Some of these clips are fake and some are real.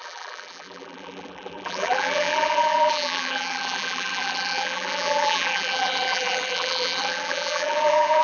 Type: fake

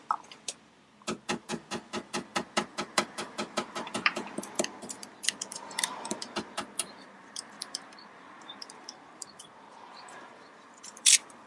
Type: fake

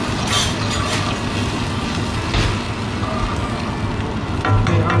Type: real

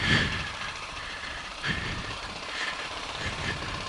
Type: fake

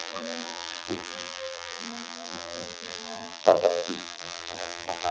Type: fake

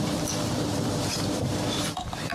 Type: real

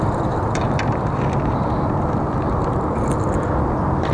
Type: real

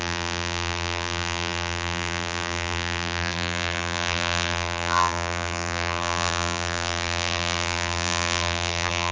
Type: fake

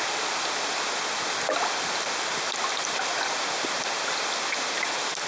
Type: real